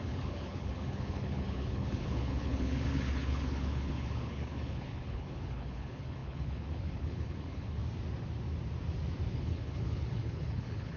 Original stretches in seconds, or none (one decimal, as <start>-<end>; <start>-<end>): 7.8-9.3